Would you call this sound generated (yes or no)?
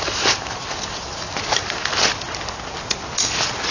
no